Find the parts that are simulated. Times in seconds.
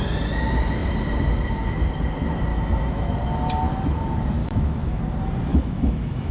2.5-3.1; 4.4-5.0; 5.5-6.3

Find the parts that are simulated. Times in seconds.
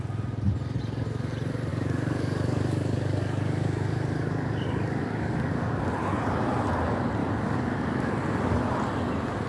1.7-5.8; 7.2-8.1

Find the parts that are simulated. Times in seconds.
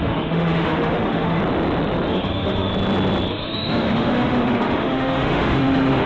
0.0-1.4; 2.1-2.7; 3.3-6.1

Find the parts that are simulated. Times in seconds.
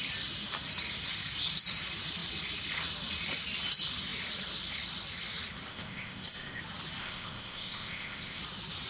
5.7-6.6; 7.0-8.4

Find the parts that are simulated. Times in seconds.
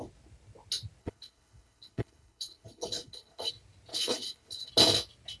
1.0-3.5; 3.9-4.7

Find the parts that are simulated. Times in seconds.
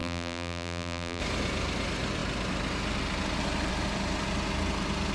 0.0-1.2